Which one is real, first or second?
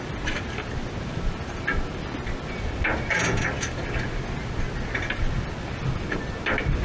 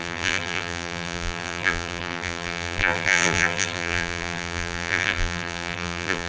first